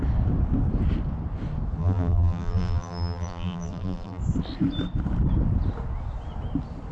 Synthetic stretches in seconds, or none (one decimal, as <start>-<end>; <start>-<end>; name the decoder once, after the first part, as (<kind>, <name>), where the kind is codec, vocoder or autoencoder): 1.8-4.2 (vocoder, BigVGAN v2)